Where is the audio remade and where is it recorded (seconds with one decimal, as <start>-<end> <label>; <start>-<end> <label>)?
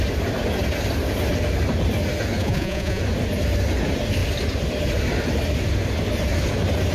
0.0-2.4 recorded; 2.4-3.0 remade; 3.0-6.9 recorded